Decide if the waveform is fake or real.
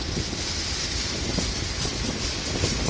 fake